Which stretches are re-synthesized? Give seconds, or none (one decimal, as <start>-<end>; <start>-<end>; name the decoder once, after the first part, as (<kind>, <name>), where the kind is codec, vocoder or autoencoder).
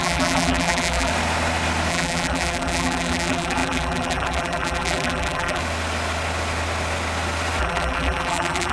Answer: 0.0-1.1 (vocoder, BigVGAN v2); 1.9-5.6; 7.6-8.7